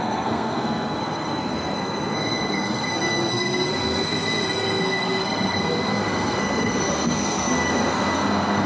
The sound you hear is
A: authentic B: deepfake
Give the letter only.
B